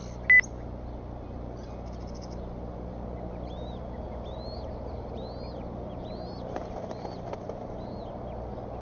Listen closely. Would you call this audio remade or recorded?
recorded